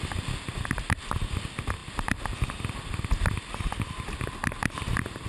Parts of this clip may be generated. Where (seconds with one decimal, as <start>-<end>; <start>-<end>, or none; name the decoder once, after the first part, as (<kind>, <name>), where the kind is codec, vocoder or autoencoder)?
none